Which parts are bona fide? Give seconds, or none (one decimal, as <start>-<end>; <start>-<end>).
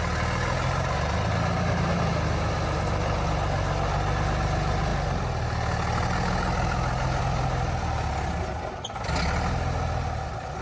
0.0-10.6